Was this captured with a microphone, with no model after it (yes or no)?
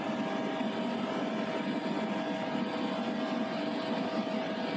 yes